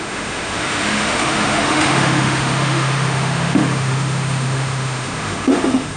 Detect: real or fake fake